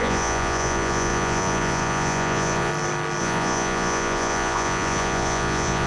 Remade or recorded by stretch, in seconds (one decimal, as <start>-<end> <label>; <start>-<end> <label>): 0.0-2.7 remade; 2.7-3.2 recorded; 3.2-5.9 remade